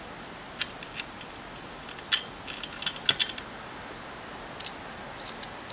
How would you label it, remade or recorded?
recorded